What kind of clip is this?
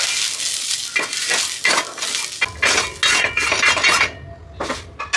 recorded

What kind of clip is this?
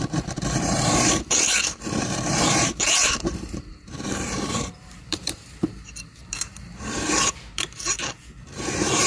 remade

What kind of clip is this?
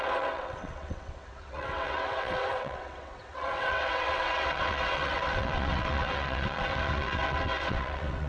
remade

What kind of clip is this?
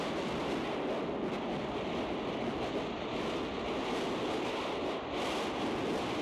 recorded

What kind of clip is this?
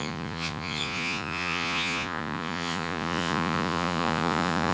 remade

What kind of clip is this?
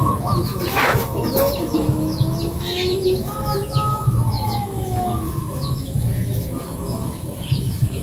remade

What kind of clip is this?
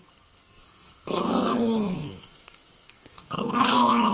remade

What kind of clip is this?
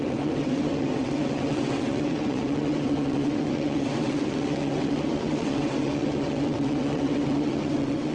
remade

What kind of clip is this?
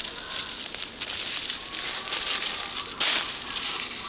recorded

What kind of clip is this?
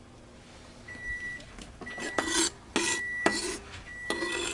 recorded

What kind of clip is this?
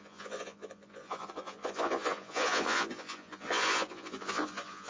remade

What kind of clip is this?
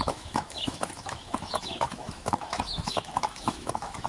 remade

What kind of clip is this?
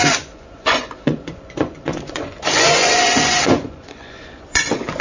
remade